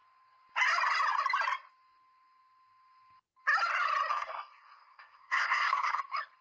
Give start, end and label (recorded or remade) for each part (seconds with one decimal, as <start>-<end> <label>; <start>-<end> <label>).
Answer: 0.0-4.1 recorded; 4.1-6.0 remade; 6.0-6.4 recorded